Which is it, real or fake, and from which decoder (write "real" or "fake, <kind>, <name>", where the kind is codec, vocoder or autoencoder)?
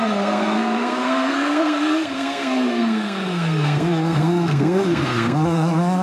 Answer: fake, codec, SNAC